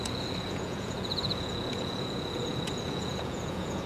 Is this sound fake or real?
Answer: fake